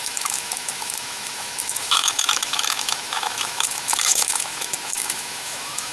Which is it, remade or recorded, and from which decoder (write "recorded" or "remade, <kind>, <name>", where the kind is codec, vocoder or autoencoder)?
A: remade, autoencoder, DAC-VAE